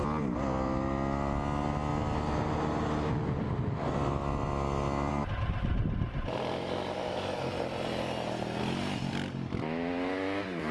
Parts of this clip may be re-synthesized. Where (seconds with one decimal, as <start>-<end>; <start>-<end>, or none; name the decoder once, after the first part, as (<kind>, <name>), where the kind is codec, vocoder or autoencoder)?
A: none